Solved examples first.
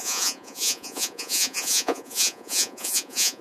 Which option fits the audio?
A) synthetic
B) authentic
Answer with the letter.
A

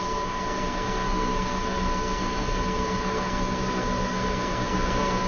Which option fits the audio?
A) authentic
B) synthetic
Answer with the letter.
B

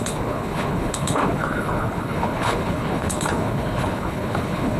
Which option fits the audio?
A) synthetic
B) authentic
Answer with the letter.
A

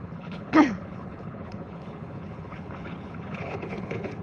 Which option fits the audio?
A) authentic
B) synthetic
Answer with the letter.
B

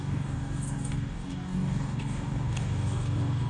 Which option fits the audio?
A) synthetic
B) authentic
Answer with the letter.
A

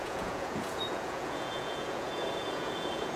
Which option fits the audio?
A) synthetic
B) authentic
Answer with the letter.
A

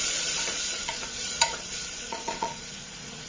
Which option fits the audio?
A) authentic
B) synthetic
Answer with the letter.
B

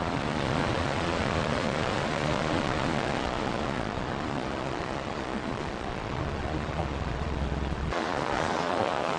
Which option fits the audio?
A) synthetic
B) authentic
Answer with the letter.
A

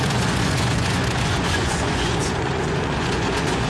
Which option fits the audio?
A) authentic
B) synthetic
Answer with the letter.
B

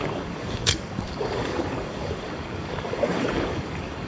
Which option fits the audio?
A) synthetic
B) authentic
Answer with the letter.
A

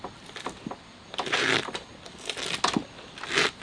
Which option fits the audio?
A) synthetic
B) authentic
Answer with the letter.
B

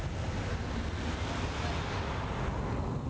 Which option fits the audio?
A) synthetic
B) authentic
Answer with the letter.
B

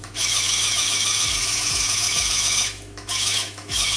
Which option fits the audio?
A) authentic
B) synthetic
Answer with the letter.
B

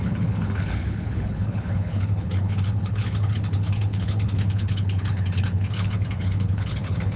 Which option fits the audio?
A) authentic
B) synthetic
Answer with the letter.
B